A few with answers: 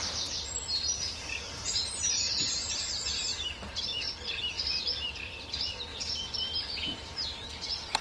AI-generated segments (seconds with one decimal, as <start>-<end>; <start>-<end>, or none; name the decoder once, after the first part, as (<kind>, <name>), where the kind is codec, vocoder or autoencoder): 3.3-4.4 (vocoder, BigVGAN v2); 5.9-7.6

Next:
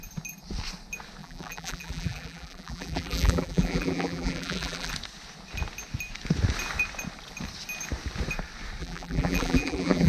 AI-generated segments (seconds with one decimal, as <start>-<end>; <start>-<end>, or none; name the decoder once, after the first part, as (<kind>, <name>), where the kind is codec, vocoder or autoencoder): 1.2-4.9 (vocoder, BigVGAN v2); 8.8-10.1

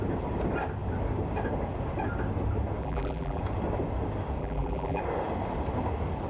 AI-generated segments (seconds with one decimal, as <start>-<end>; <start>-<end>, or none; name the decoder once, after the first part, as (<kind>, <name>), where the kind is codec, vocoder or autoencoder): 2.8-3.4 (vocoder, BigVGAN v2); 4.4-5.0